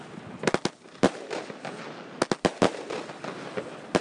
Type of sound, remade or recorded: recorded